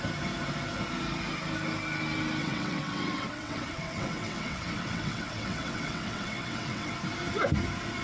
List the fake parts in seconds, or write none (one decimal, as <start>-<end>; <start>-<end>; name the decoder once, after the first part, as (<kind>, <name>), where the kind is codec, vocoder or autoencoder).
2.4-6.9 (vocoder, WaveNeXt)